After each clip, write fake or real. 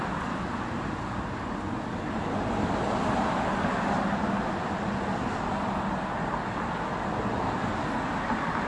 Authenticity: real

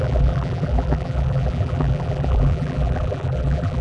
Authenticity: fake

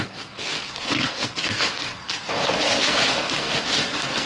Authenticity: fake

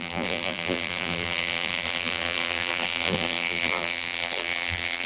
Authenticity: fake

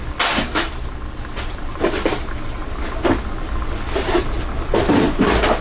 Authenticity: real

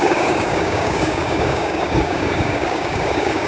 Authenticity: fake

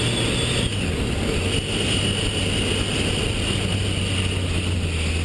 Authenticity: real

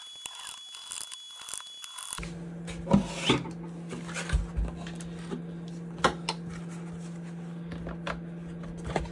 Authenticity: real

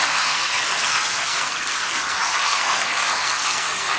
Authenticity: fake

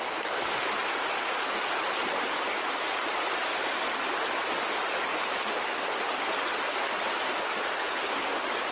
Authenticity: real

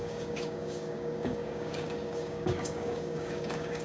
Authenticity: fake